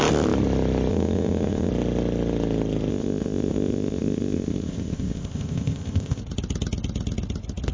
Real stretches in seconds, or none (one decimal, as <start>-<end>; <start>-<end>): 0.0-0.9; 1.7-2.9; 6.2-7.7